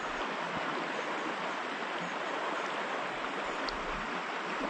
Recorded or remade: recorded